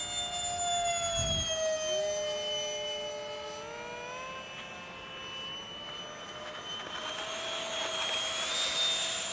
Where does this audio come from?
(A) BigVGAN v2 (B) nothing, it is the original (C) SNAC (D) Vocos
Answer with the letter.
B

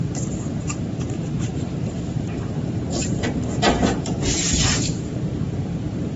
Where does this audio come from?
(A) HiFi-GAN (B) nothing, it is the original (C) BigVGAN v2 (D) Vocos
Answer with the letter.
C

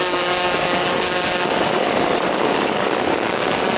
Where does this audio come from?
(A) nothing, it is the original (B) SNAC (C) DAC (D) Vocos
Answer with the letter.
C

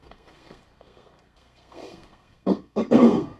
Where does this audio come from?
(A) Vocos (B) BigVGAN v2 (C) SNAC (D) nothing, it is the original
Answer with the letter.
C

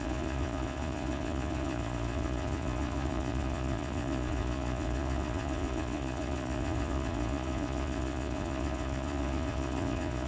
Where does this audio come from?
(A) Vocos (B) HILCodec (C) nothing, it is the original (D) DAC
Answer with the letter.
A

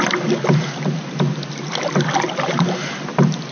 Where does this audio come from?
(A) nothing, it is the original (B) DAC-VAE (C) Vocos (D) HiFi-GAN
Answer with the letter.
A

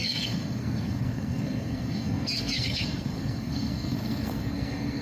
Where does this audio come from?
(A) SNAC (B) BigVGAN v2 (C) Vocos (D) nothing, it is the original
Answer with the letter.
A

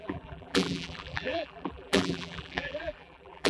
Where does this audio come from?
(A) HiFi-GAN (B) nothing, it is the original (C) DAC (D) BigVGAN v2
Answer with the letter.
D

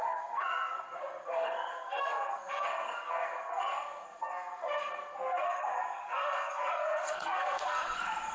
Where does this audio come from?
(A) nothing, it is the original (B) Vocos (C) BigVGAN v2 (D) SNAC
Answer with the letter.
D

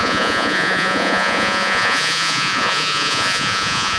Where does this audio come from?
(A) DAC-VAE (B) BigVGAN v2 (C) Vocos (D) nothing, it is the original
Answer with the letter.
C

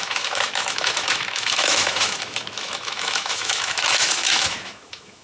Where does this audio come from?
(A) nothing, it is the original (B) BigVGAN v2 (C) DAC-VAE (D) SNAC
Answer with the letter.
C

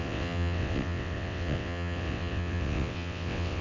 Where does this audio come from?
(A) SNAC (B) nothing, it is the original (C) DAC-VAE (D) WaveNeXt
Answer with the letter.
D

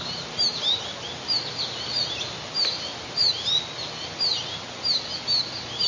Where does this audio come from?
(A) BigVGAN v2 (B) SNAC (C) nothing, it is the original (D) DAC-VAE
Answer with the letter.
C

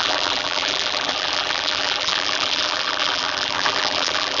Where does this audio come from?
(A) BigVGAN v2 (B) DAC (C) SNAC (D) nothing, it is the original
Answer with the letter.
A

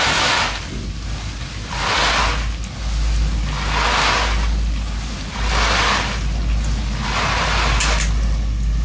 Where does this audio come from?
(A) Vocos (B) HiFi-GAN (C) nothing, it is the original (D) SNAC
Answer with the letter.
C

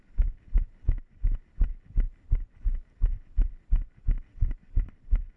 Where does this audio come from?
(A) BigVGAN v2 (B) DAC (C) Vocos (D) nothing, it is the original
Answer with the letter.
D